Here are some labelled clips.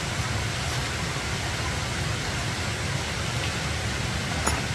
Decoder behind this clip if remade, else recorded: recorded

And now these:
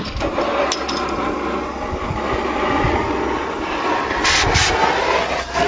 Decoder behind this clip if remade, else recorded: recorded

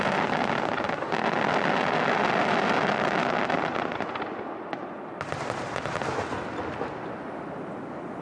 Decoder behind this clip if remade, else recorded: recorded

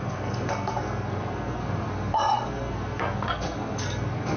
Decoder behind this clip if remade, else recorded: remade, codec, SNAC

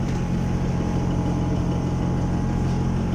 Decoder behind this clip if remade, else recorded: recorded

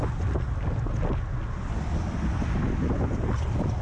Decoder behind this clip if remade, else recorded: recorded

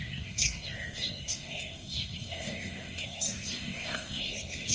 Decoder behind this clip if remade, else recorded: remade, codec, SNAC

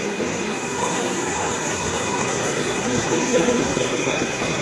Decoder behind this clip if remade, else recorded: remade, codec, SNAC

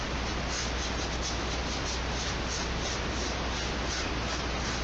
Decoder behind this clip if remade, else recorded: recorded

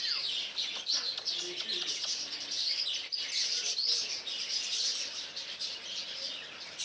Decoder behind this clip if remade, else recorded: recorded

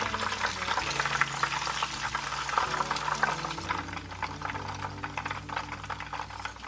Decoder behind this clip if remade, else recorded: recorded